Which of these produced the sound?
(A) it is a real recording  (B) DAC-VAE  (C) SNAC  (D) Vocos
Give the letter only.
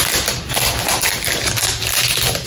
A